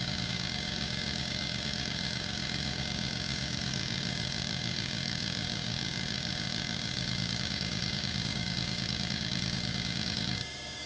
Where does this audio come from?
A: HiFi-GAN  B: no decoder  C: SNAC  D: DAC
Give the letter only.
D